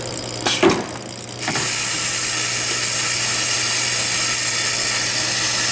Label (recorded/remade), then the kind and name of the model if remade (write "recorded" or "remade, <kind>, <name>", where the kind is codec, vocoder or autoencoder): recorded